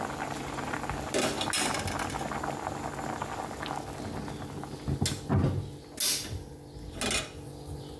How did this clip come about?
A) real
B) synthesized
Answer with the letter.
A